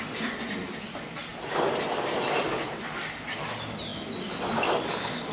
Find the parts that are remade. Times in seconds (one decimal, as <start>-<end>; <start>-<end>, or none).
none